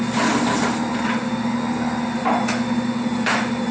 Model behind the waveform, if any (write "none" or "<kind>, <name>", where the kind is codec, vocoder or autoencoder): none